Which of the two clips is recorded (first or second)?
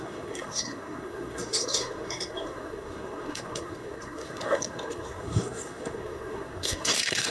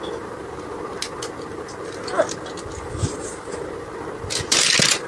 second